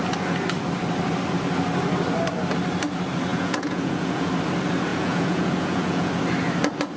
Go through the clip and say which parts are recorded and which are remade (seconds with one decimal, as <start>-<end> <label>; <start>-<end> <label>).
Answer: 0.0-3.3 recorded; 3.3-4.3 remade; 4.3-4.9 recorded; 4.9-6.1 remade; 6.1-7.0 recorded

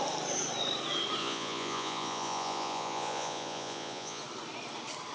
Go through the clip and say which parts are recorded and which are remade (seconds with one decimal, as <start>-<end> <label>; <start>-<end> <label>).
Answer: 0.0-1.2 recorded; 1.2-4.2 remade; 4.2-5.1 recorded

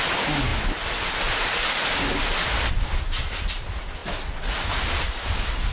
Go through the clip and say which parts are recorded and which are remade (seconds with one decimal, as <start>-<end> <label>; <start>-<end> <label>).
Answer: 0.0-5.7 recorded

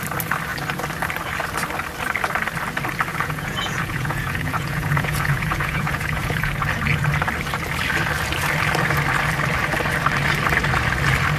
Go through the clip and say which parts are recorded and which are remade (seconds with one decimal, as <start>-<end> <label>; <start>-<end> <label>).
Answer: 0.0-3.1 recorded; 3.1-6.5 remade; 6.5-11.4 recorded